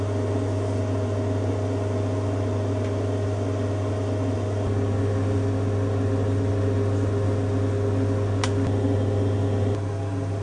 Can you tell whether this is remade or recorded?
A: recorded